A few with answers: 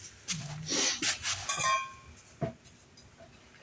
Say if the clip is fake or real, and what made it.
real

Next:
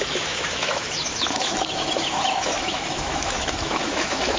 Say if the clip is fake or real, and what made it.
fake, autoencoder, DAC-VAE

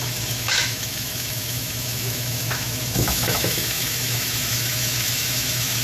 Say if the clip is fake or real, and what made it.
fake, autoencoder, DAC-VAE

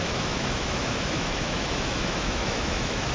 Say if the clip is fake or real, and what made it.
fake, autoencoder, DAC-VAE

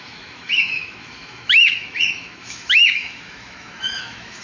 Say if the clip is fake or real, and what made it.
fake, autoencoder, DAC-VAE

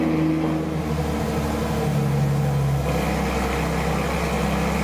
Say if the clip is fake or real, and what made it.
real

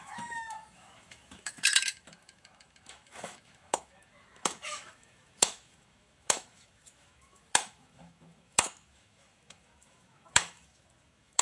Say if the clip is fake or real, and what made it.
fake, autoencoder, DAC-VAE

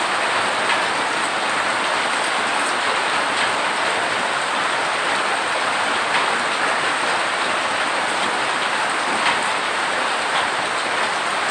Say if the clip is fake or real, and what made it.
real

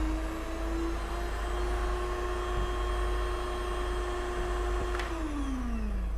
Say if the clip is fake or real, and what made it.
real